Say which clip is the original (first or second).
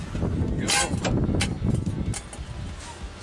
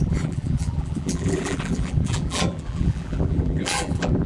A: first